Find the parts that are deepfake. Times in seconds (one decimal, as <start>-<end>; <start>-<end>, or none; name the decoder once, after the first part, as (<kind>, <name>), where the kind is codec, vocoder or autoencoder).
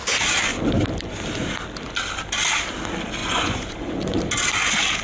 3.2-4.2 (vocoder, Vocos)